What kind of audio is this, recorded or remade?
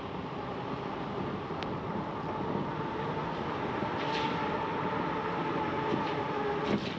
remade